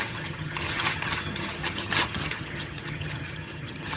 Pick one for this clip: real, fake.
fake